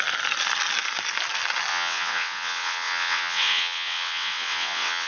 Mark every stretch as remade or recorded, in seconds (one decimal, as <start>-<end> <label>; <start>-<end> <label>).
0.0-1.7 recorded; 1.7-5.1 remade